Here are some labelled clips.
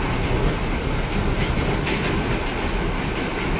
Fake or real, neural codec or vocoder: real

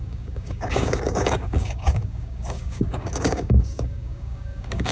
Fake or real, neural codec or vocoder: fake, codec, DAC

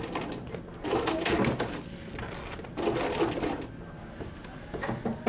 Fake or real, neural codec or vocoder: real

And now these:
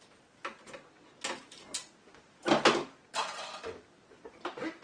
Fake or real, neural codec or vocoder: real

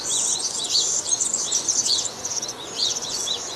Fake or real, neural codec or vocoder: fake, vocoder, Vocos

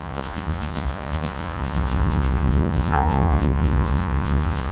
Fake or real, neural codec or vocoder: fake, vocoder, Vocos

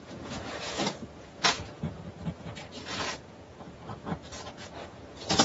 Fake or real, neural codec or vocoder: fake, vocoder, Vocos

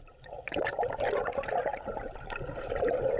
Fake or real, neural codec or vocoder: fake, vocoder, BigVGAN v2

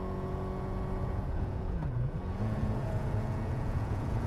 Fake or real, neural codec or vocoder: fake, vocoder, Vocos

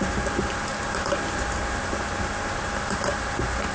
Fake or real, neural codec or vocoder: real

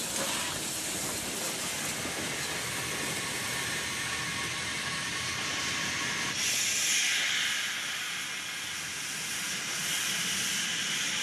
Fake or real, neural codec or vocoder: real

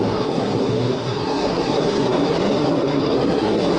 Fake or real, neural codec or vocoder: fake, codec, SNAC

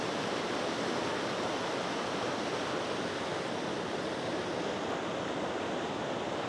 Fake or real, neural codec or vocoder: real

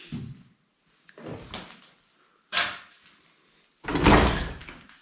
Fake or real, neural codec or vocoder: real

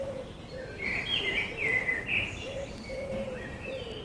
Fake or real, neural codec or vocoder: fake, vocoder, BigVGAN v2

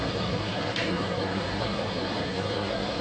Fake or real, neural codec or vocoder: fake, codec, SNAC